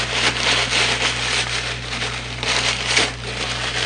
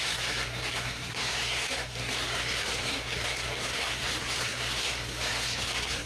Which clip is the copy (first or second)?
second